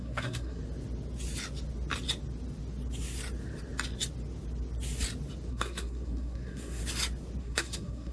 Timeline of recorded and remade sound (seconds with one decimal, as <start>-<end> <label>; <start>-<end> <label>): 0.0-0.6 remade; 0.6-5.5 recorded; 5.5-6.8 remade; 6.8-7.4 recorded; 7.4-8.1 remade